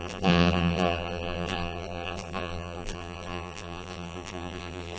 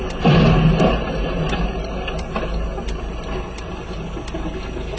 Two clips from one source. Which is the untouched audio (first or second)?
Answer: second